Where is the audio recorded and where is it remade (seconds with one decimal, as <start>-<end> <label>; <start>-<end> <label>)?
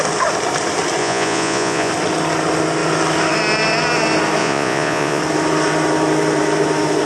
0.0-1.0 recorded; 1.0-1.9 remade; 1.9-4.4 recorded; 4.4-5.2 remade; 5.2-7.1 recorded